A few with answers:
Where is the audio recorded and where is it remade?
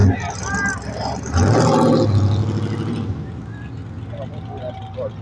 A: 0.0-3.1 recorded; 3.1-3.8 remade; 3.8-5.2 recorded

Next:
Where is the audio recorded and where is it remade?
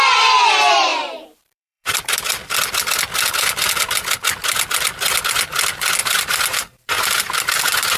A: 0.0-0.9 recorded; 0.9-2.0 remade; 2.0-6.0 recorded; 6.0-8.0 remade